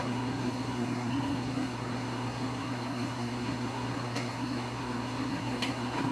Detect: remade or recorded remade